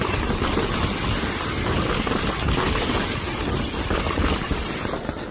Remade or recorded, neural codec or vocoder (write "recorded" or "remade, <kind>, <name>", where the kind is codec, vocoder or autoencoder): recorded